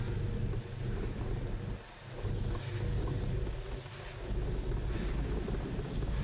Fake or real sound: real